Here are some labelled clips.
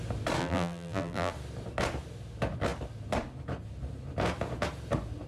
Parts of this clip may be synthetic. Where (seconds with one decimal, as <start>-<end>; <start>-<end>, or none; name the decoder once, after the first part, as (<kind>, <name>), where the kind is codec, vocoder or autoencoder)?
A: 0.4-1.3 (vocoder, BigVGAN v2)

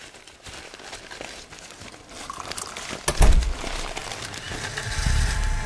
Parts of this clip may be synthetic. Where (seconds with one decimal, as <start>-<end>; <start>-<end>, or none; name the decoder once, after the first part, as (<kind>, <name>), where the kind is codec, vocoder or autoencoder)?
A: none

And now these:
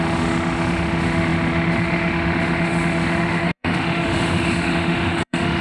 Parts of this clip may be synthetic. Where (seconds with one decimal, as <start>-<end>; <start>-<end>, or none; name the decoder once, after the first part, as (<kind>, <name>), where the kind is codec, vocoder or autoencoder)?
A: 0.0-5.6 (autoencoder, DAC-VAE)

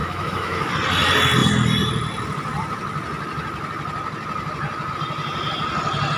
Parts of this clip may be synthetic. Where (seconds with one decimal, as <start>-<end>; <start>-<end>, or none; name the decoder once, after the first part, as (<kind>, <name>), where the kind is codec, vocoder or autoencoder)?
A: 0.0-0.7 (autoencoder, DAC-VAE)

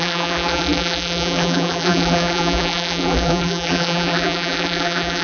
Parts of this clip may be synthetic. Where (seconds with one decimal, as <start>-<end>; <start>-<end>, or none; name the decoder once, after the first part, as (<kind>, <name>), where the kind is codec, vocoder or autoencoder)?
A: 0.0-5.2 (vocoder, BigVGAN v2)

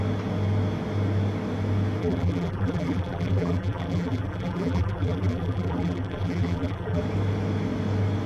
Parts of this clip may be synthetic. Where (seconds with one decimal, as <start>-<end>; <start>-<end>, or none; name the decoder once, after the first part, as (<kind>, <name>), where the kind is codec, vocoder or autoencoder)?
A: 2.0-7.0 (vocoder, BigVGAN v2)